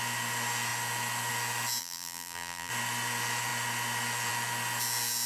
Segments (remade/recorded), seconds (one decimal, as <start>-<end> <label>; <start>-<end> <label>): 0.0-1.8 recorded; 1.8-2.7 remade; 2.7-5.3 recorded